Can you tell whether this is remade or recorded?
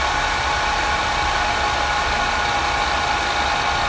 recorded